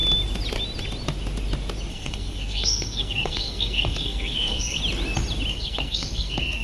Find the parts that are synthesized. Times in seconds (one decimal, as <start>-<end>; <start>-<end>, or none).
1.9-4.8; 5.5-6.6